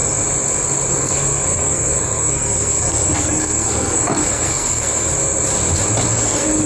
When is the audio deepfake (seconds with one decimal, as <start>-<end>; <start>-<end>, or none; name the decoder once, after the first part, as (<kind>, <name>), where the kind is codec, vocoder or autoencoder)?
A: 0.9-5.1 (codec, SNAC); 6.1-6.7